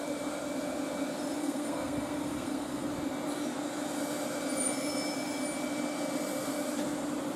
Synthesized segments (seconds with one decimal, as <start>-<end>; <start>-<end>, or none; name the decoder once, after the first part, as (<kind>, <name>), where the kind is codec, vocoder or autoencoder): 1.4-2.9 (codec, SNAC)